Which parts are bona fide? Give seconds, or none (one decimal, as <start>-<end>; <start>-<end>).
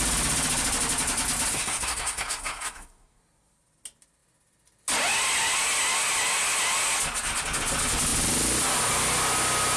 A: 0.0-1.5; 3.2-9.8